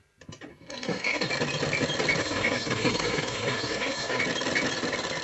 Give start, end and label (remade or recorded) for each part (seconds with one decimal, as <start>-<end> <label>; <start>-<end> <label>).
0.0-0.5 recorded; 0.5-1.3 remade; 1.3-2.2 recorded; 2.2-4.2 remade; 4.2-5.2 recorded